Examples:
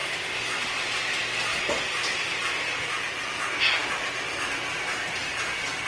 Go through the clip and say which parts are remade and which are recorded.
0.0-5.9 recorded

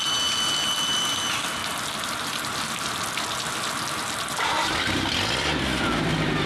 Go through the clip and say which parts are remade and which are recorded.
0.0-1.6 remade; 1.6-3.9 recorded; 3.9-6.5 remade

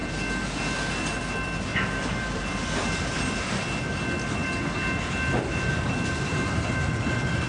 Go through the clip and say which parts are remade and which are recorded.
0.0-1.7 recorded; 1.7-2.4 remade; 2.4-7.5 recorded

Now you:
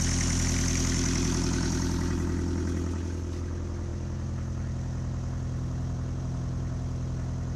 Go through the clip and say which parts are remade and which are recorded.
0.0-7.6 recorded

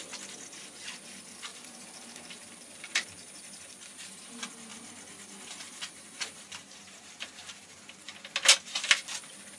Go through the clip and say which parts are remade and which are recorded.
0.0-1.5 recorded; 1.5-3.3 remade; 3.3-4.7 recorded; 4.7-8.1 remade; 8.1-9.6 recorded

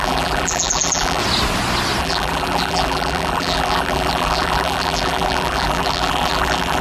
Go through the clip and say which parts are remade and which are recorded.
0.0-1.2 remade; 1.2-2.0 recorded; 2.0-6.8 remade

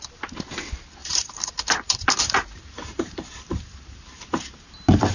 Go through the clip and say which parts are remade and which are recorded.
0.0-1.0 recorded; 1.0-4.1 remade; 4.1-5.1 recorded

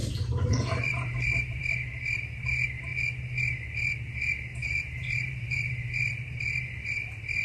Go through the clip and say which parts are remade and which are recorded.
0.0-1.6 remade; 1.6-4.6 recorded; 4.6-6.0 remade; 6.0-7.4 recorded